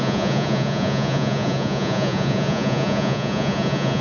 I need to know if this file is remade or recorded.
remade